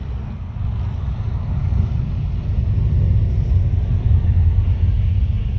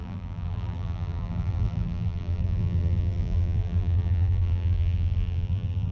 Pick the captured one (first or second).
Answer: first